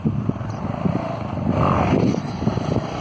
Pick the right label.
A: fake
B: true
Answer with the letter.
B